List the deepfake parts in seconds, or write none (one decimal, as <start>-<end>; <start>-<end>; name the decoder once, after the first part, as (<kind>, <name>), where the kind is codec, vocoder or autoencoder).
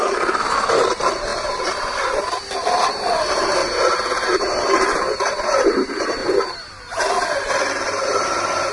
0.0-3.6 (vocoder, BigVGAN v2); 4.6-6.2; 7.0-8.7